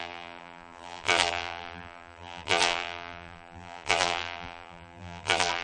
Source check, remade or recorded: remade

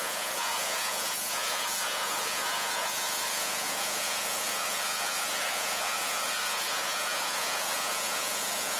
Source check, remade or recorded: remade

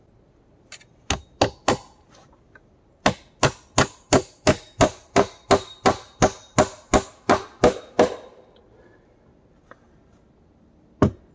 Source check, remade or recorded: recorded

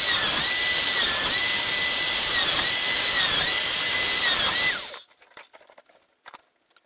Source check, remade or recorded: recorded